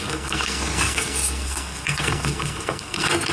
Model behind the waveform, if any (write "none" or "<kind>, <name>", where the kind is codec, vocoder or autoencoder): codec, SNAC